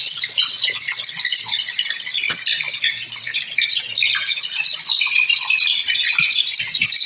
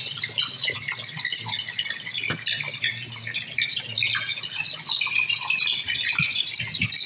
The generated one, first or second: first